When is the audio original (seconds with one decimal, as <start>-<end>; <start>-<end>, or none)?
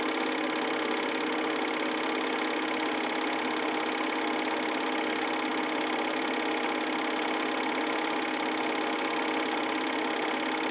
0.0-10.7